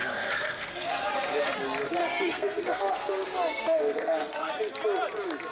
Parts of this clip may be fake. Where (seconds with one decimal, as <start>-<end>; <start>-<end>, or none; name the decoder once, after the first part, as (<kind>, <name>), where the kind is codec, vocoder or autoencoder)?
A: 0.0-1.5 (codec, SNAC); 2.0-4.5